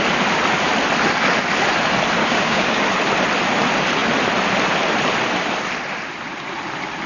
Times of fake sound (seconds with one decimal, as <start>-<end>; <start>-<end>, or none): 2.2-2.8